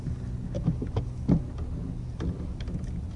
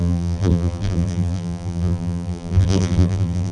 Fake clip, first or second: second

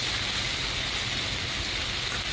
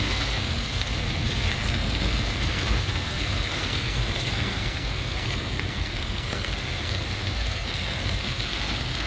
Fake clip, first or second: second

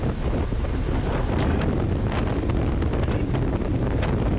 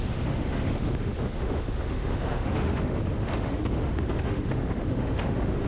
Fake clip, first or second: second